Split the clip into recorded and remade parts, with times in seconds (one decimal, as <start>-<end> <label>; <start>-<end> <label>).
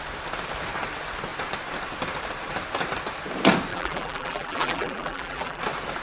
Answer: 0.0-3.7 recorded; 3.7-5.6 remade; 5.6-6.0 recorded